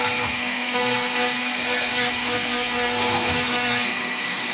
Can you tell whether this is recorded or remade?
remade